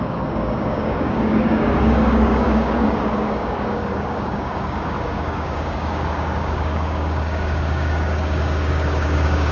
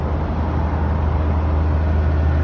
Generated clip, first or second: first